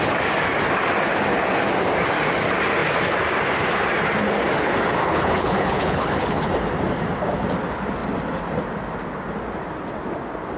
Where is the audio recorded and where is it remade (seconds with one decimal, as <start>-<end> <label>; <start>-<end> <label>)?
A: 0.0-5.0 recorded; 5.0-6.5 remade; 6.5-10.6 recorded